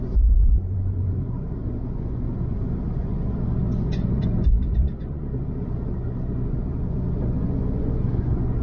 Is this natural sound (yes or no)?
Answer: no